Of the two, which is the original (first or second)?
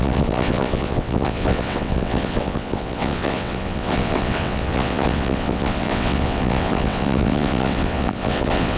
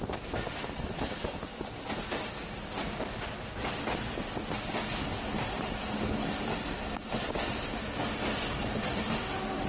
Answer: second